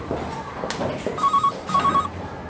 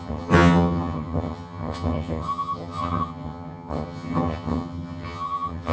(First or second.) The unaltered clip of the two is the first